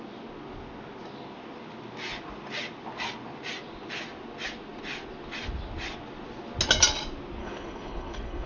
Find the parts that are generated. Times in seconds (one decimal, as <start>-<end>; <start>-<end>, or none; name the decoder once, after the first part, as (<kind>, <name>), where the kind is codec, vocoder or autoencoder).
7.4-8.5 (codec, HILCodec)